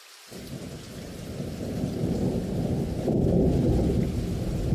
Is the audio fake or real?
real